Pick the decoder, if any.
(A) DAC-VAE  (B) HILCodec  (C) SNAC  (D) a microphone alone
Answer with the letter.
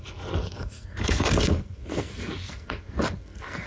C